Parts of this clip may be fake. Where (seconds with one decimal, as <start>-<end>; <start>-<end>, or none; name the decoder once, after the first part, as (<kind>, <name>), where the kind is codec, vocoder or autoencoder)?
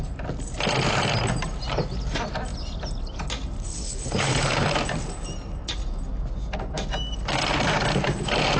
3.7-4.7 (codec, HILCodec)